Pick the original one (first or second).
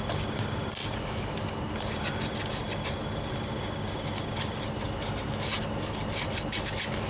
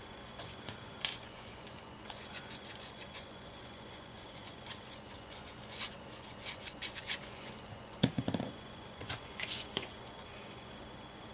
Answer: first